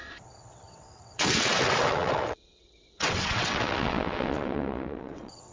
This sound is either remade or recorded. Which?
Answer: remade